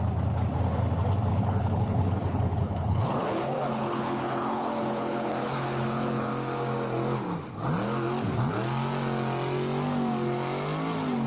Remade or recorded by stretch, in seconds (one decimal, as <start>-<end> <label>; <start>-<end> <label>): 0.0-1.3 recorded; 1.3-6.3 remade; 6.3-11.3 recorded